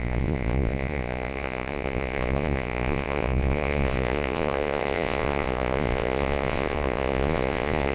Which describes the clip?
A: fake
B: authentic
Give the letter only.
A